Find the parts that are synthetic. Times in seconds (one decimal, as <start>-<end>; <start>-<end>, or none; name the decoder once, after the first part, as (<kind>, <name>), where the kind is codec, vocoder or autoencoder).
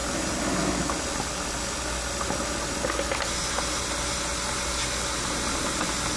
none